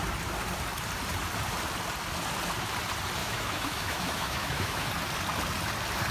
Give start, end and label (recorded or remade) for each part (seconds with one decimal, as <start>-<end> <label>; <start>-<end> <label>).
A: 0.0-3.2 recorded; 3.2-4.9 remade; 4.9-6.1 recorded